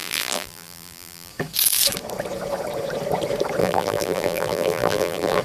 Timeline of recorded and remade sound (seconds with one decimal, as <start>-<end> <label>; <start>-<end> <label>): 0.0-1.3 remade; 1.3-3.6 recorded; 3.6-5.4 remade